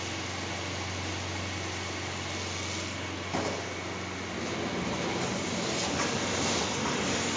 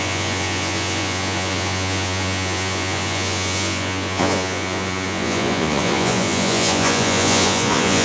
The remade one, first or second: second